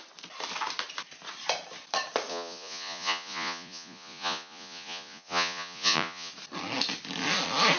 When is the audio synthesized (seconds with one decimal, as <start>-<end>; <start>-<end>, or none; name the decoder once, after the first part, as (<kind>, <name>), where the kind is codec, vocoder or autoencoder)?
2.3-6.3 (vocoder, Vocos)